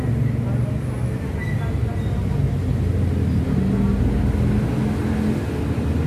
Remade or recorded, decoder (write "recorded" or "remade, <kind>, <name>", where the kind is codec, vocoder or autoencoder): recorded